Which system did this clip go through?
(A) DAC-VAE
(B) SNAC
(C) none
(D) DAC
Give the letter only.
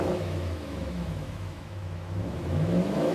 A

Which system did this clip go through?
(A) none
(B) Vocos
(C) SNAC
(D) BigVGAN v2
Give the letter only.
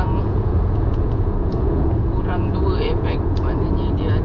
B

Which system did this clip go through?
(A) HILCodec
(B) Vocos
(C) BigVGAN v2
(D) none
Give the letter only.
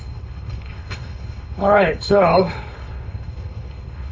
A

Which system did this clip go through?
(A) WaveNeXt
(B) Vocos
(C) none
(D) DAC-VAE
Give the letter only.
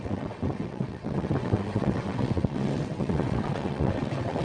A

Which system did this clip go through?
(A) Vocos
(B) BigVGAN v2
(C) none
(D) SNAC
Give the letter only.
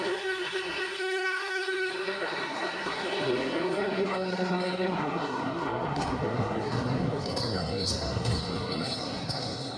D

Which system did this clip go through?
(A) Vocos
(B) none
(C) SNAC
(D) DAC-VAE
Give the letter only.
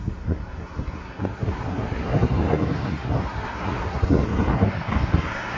C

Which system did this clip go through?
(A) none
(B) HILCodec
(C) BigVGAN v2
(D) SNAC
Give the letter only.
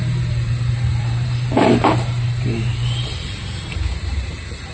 C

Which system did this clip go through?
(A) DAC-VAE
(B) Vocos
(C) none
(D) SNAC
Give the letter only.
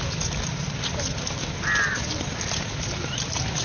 C